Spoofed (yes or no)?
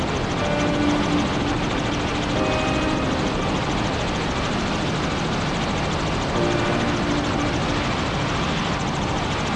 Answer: no